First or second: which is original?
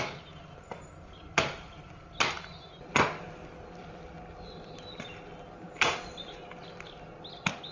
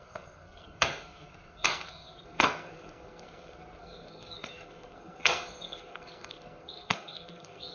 first